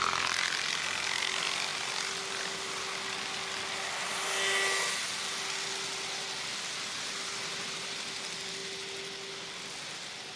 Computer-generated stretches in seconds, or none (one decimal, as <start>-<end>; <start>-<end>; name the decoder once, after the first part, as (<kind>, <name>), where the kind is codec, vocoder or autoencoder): none